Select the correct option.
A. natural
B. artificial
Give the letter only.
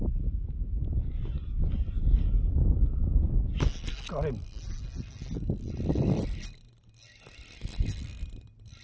A